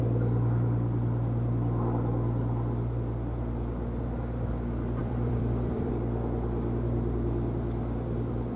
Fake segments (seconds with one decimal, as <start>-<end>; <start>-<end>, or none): 5.0-5.9